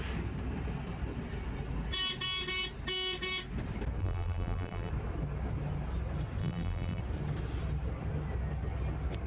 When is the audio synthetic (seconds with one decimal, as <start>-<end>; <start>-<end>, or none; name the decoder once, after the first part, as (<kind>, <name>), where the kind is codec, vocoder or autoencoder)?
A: 4.0-4.9 (vocoder, BigVGAN v2); 6.4-7.0